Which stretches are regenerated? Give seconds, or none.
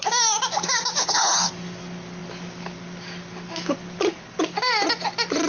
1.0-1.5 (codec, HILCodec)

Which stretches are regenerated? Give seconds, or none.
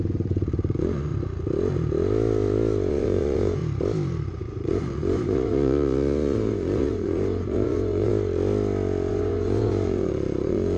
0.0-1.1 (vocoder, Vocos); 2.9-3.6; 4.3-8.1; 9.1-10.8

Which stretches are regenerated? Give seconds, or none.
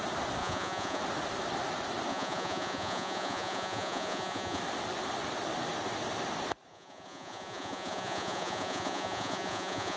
0.4-1.0 (vocoder, Vocos); 2.1-4.6; 6.7-10.0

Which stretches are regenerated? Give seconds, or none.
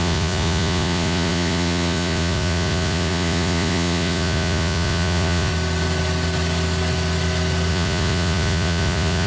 0.0-5.5 (vocoder, Vocos); 7.7-9.3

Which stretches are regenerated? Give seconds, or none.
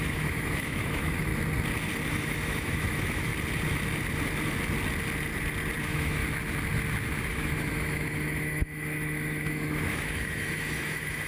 0.0-1.3 (autoencoder, DAC-VAE); 2.1-3.3; 5.8-6.2; 7.3-11.3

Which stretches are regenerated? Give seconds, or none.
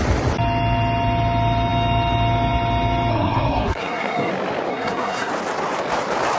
3.1-4.3 (codec, SNAC); 4.7-5.3